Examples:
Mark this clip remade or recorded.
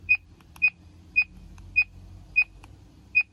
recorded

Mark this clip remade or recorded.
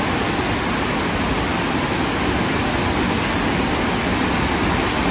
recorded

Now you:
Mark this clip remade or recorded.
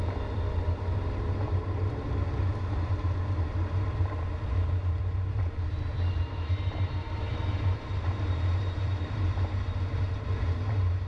remade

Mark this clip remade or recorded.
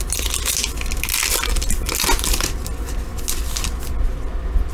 recorded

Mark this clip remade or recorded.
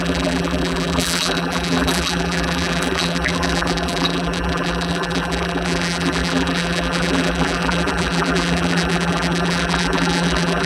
remade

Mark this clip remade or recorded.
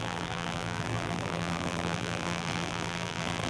remade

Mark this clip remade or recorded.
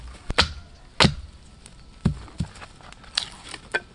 recorded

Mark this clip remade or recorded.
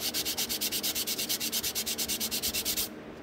remade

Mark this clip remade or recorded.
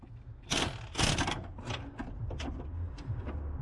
recorded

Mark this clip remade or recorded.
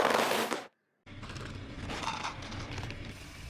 remade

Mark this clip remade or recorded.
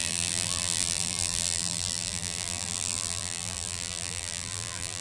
remade